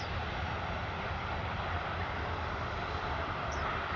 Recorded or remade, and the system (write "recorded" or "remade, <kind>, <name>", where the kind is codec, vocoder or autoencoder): recorded